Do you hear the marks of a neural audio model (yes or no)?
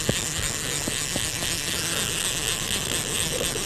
no